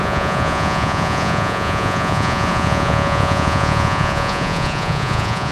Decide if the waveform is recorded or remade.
remade